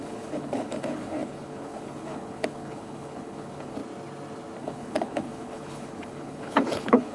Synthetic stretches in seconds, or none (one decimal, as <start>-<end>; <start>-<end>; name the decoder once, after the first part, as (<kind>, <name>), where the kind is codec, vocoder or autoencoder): 0.0-3.8 (codec, HILCodec); 4.6-7.1